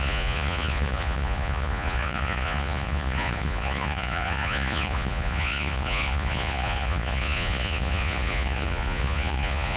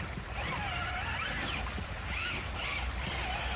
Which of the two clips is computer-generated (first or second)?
first